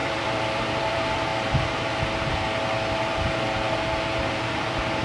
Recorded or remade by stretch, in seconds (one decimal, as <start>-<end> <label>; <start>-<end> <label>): 0.0-1.3 remade; 1.3-4.3 recorded; 4.3-5.0 remade